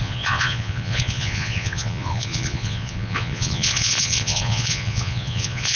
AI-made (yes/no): yes